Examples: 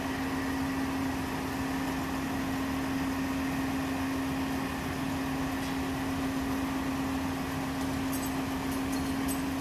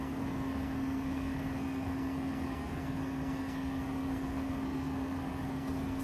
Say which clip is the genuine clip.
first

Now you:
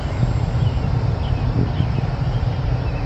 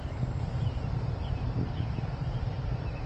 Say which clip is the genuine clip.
first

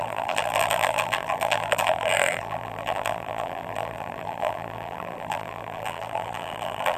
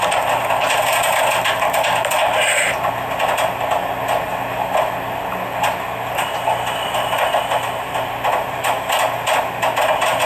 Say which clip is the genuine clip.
second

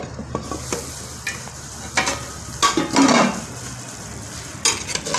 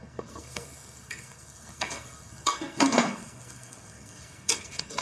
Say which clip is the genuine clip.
first